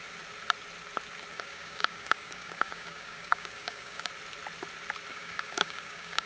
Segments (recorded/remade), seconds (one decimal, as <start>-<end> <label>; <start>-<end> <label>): 0.0-1.3 recorded; 1.3-4.1 remade; 4.1-5.1 recorded; 5.1-6.3 remade